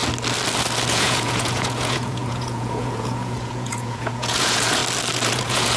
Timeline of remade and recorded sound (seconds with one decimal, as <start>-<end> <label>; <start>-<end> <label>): 0.0-0.9 recorded; 0.9-4.8 remade; 4.8-5.3 recorded; 5.3-5.8 remade